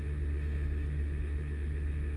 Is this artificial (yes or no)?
yes